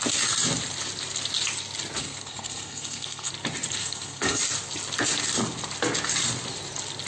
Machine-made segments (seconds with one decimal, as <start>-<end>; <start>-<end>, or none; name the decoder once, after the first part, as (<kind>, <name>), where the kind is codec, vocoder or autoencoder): 2.0-3.3 (codec, SNAC); 3.8-4.4